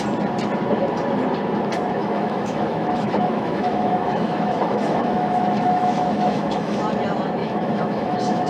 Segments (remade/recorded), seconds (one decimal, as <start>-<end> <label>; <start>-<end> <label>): 0.0-2.0 recorded; 2.0-6.8 remade; 6.8-7.4 recorded; 7.4-8.5 remade